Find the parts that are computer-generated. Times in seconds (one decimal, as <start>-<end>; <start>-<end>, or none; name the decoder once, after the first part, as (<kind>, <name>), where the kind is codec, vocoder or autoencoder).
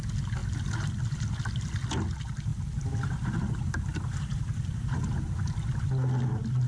none